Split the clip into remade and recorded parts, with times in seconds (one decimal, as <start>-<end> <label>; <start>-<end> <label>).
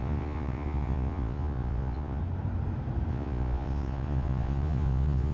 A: 0.0-2.2 remade; 2.2-3.1 recorded; 3.1-5.3 remade